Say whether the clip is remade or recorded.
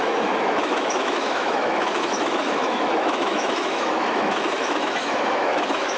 remade